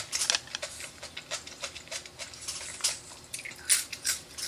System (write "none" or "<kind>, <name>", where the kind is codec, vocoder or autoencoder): none